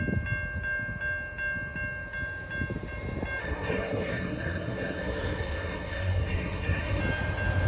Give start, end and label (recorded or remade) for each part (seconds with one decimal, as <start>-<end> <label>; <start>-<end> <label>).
0.0-3.4 recorded; 3.4-7.0 remade; 7.0-7.7 recorded